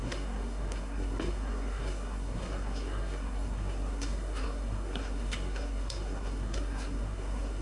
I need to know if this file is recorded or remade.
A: remade